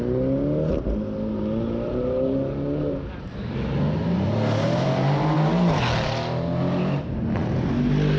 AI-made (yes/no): no